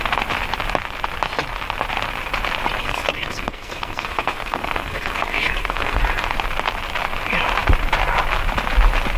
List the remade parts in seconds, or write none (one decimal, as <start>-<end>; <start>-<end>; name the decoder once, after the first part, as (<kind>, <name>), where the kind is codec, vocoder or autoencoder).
2.8-6.0 (codec, SNAC)